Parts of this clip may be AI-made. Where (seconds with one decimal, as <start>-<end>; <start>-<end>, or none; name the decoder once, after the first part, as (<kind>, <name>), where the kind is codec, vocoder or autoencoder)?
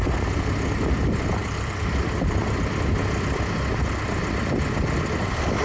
1.4-3.8 (vocoder, BigVGAN v2)